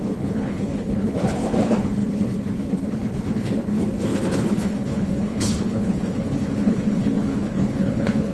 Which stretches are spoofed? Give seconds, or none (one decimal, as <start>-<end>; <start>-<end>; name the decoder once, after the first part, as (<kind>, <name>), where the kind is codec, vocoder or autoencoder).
0.0-8.3 (codec, HILCodec)